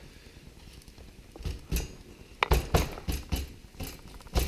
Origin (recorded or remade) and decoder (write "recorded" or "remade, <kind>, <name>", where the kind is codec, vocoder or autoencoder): recorded